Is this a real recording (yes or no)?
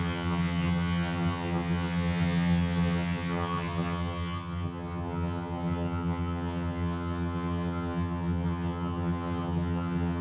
no